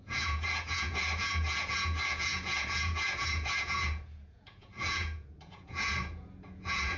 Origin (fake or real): fake